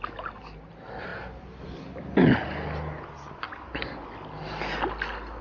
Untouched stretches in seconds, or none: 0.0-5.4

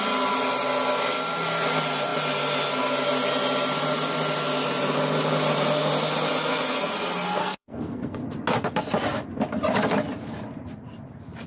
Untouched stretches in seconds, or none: 0.0-7.4; 8.2-11.5

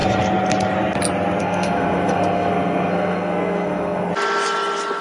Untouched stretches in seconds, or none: 0.0-1.4; 4.1-5.0

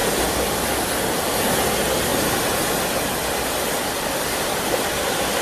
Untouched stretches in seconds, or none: 0.0-5.4

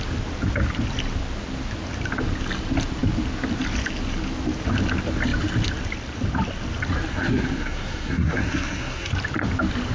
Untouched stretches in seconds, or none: 0.0-7.1; 9.1-9.9

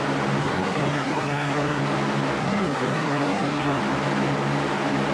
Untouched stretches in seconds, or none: 0.0-0.4; 1.8-2.4; 3.8-5.1

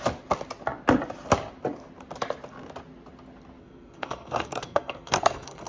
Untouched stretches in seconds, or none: 0.0-3.6

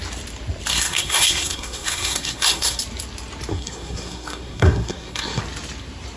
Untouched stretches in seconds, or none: 0.0-0.7; 2.8-3.5; 5.4-6.2